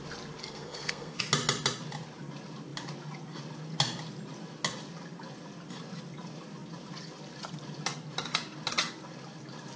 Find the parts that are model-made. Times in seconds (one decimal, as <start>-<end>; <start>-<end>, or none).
0.4-1.2